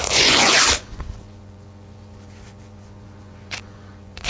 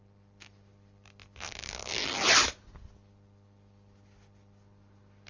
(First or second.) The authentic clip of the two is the second